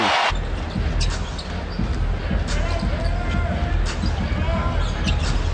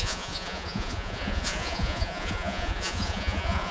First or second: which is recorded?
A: first